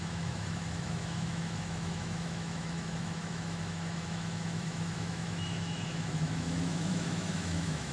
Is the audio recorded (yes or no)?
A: no